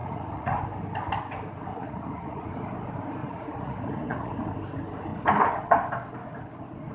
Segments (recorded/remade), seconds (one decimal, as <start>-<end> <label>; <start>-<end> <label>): 0.0-0.6 remade; 0.6-1.7 recorded; 1.7-2.5 remade; 2.5-3.2 recorded; 3.2-4.3 remade; 4.3-6.9 recorded